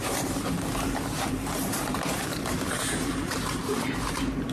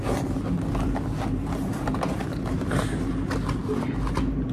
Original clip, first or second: second